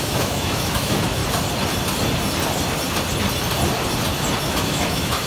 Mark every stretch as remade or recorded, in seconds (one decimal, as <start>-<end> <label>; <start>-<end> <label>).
0.0-1.2 remade; 1.2-4.4 recorded; 4.4-5.3 remade